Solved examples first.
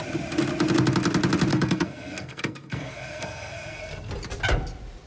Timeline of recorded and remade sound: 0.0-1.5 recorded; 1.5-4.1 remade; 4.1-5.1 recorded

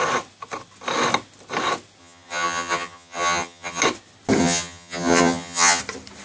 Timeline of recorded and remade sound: 0.0-2.0 recorded; 2.0-3.8 remade; 3.8-4.4 recorded; 4.4-5.8 remade; 5.8-6.2 recorded